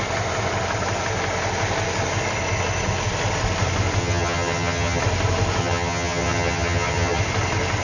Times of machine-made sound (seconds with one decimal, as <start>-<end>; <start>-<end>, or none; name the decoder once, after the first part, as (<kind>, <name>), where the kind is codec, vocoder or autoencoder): 4.0-5.0 (vocoder, HiFi-GAN); 5.6-7.2